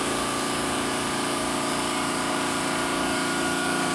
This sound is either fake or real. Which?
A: fake